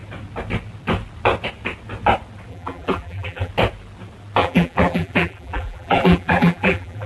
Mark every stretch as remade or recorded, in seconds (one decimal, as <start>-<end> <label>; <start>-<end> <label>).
0.0-2.5 recorded; 2.5-3.5 remade; 3.5-4.4 recorded; 4.4-7.1 remade